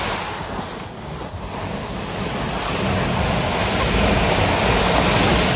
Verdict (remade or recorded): recorded